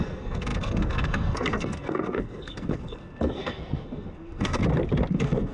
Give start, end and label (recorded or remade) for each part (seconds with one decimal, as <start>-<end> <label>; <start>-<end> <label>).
0.0-4.6 remade; 4.6-5.1 recorded; 5.1-5.5 remade